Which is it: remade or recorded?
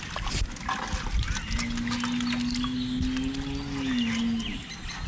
recorded